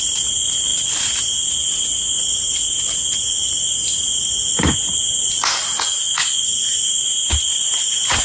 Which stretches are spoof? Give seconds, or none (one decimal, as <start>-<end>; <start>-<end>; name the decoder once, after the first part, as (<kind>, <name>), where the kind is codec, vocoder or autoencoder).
none